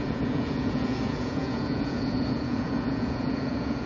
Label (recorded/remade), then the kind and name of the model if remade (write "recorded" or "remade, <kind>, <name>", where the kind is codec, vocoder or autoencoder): remade, vocoder, Vocos